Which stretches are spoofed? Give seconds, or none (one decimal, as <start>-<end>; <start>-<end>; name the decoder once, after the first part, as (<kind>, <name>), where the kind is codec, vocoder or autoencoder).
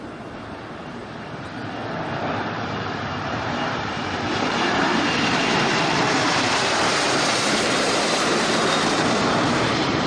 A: 0.0-1.6 (vocoder, BigVGAN v2); 2.3-10.1